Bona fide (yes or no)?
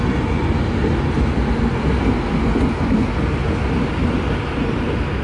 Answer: yes